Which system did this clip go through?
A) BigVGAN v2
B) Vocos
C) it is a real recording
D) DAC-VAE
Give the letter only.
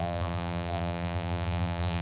A